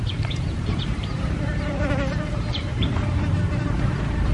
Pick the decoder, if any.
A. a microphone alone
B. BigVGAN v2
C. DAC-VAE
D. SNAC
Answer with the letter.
B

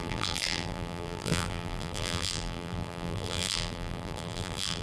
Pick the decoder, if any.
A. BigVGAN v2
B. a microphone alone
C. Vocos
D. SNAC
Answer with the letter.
A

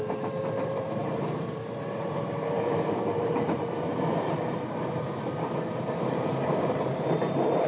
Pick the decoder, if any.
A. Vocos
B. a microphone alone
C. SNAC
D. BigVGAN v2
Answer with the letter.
D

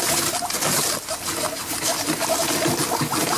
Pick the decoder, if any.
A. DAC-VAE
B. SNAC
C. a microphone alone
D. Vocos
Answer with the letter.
C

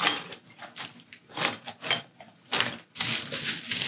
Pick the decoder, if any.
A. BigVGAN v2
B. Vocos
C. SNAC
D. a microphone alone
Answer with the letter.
A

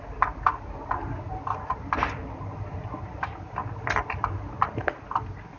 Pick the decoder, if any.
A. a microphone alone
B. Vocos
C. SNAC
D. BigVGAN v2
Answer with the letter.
A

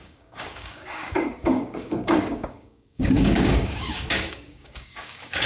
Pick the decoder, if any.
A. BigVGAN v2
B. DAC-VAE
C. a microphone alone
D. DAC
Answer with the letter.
D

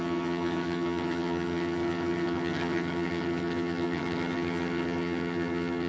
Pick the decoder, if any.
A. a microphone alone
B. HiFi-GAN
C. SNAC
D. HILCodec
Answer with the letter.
B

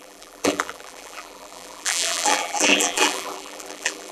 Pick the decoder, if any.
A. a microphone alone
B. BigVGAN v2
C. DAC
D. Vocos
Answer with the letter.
B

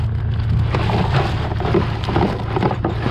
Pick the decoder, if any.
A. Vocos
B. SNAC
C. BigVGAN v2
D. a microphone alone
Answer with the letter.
D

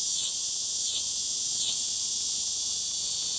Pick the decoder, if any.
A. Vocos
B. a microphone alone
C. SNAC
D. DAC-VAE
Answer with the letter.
A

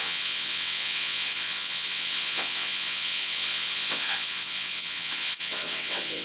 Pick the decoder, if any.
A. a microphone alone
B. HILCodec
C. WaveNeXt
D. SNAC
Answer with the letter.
C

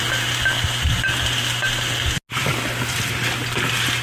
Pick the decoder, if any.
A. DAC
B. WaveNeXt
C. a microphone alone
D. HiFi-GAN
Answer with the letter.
C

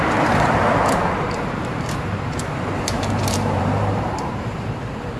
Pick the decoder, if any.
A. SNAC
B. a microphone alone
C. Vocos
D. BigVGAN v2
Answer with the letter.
D